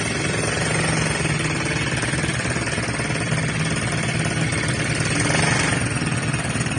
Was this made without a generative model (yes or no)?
yes